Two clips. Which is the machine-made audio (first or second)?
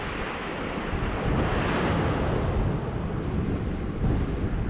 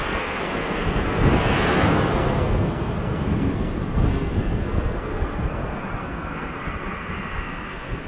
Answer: second